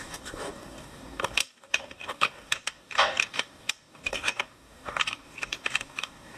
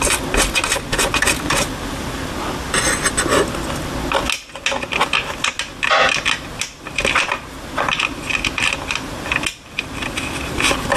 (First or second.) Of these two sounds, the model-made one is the first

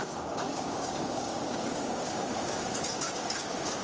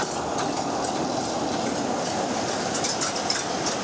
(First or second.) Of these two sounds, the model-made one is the first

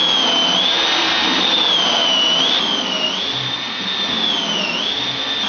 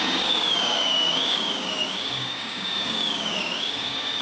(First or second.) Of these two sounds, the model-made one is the second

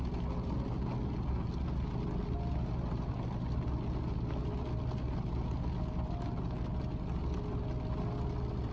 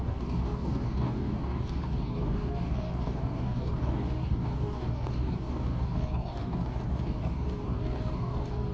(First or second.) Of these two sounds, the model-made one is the second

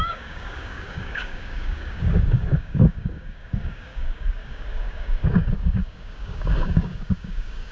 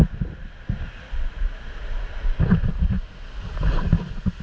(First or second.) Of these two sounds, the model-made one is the first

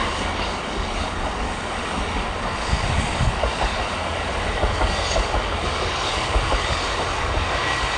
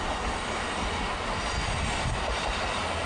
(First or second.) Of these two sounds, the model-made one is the first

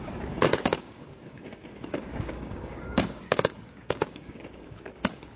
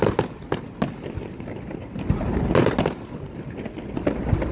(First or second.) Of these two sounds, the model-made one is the first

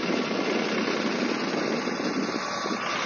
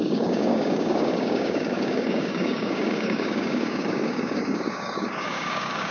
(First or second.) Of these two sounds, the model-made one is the second